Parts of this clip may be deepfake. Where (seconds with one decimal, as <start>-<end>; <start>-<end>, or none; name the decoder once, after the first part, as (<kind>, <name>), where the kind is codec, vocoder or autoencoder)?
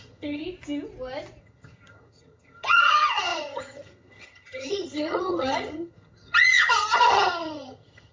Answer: 0.0-0.4 (vocoder, HiFi-GAN); 1.4-8.1